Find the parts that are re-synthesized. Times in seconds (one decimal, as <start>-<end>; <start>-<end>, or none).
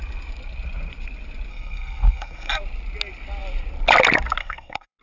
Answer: 1.5-2.6; 4.4-5.0